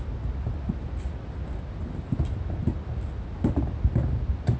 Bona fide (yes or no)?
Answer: yes